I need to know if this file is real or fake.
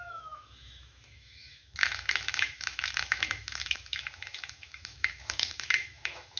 fake